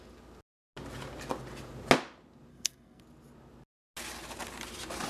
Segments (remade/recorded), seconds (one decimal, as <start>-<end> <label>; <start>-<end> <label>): 0.0-2.5 recorded; 2.5-3.0 remade; 3.0-5.1 recorded